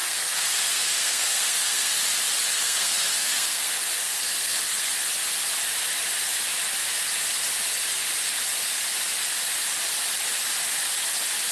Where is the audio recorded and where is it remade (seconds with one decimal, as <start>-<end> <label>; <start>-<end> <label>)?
0.0-1.9 remade; 1.9-2.5 recorded; 2.5-4.9 remade; 4.9-11.5 recorded